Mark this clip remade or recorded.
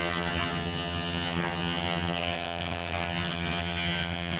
remade